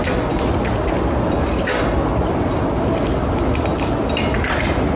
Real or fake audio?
real